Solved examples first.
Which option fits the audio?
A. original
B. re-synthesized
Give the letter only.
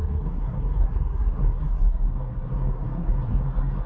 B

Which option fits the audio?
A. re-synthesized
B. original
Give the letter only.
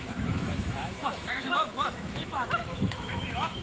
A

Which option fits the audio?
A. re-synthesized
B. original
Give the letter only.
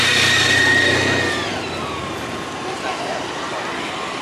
B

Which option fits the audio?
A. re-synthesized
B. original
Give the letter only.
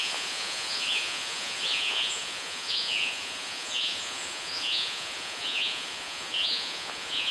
A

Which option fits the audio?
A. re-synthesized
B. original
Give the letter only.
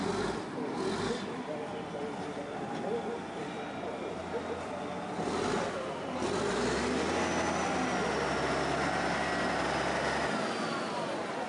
B